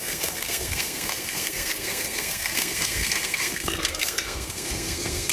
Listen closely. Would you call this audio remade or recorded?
remade